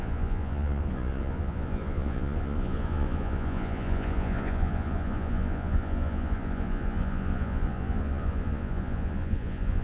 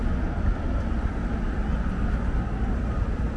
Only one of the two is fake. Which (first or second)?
first